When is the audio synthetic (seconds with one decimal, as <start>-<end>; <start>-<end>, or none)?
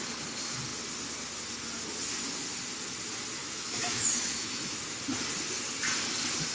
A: 3.4-4.8